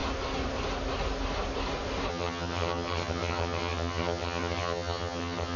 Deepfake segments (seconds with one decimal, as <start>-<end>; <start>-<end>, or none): 2.1-5.6